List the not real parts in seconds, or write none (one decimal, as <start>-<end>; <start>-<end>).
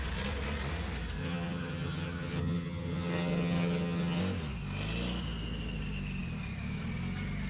1.2-4.2